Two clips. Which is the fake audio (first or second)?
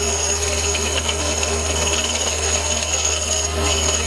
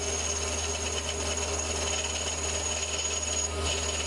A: first